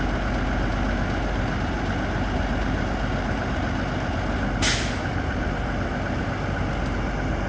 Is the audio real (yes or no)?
yes